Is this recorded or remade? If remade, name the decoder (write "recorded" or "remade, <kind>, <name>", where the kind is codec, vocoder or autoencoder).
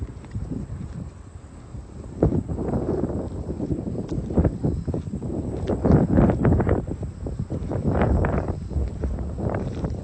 remade, vocoder, BigVGAN v2